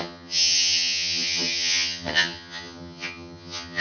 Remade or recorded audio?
remade